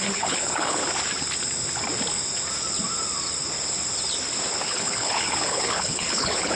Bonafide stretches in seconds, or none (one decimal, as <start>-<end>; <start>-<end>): 0.8-4.6